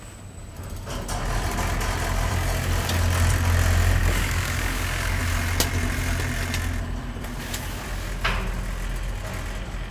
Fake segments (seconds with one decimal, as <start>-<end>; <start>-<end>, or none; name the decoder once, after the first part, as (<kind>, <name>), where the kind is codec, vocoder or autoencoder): 4.0-5.2 (codec, DAC)